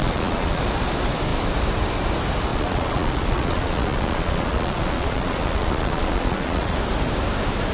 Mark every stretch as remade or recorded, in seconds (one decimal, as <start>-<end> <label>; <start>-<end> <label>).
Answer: 0.0-0.6 remade; 0.6-2.5 recorded; 2.5-6.8 remade; 6.8-7.7 recorded